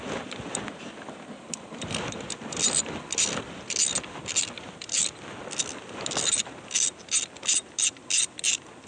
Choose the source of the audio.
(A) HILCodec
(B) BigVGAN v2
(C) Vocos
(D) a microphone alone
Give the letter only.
D